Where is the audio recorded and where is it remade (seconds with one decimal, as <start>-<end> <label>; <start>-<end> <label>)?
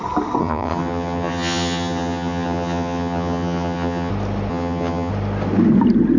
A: 0.0-0.4 recorded; 0.4-4.1 remade; 4.1-4.5 recorded; 4.5-5.1 remade; 5.1-6.2 recorded